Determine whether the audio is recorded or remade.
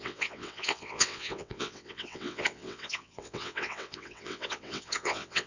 remade